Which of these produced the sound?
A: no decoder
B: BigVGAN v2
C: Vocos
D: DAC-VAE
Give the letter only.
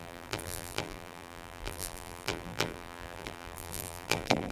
B